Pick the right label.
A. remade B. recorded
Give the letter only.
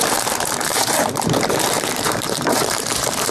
A